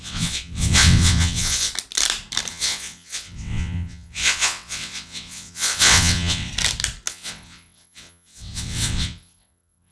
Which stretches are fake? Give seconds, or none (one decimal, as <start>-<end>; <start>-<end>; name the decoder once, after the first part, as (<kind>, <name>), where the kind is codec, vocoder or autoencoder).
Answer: 0.0-1.7 (vocoder, WaveNeXt); 2.5-6.5; 7.1-9.9